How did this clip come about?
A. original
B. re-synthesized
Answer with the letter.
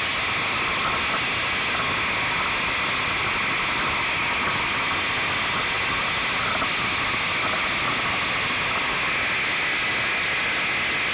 A